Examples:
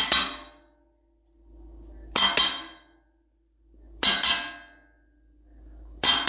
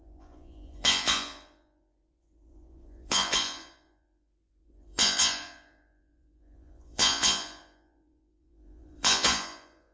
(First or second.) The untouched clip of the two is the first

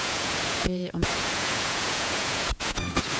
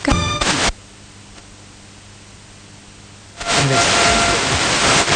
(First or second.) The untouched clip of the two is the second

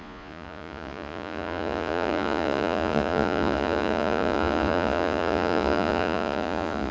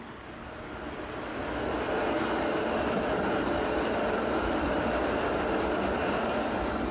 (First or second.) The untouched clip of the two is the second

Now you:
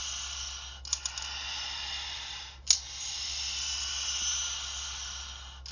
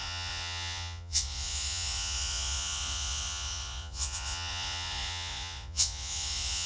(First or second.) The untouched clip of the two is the first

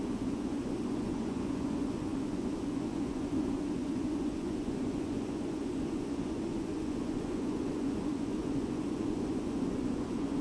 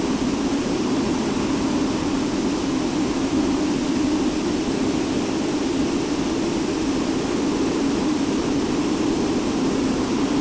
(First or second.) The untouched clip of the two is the second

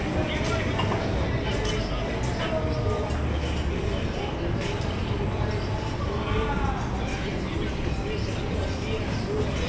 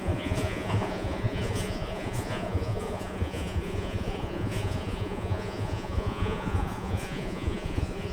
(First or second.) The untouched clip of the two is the first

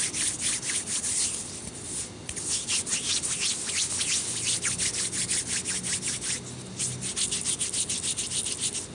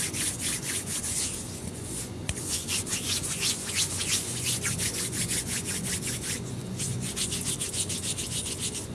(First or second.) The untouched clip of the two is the first